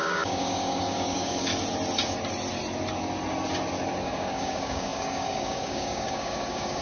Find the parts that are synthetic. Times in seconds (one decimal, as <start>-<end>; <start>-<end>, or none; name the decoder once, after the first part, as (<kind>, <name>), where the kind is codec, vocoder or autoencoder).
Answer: 0.0-1.5 (codec, DAC); 4.0-6.8